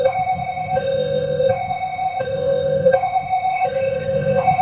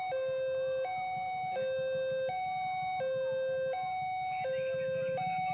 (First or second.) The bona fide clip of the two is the second